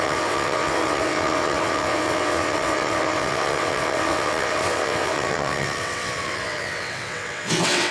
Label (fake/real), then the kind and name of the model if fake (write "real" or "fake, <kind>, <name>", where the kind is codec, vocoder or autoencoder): fake, vocoder, WaveNeXt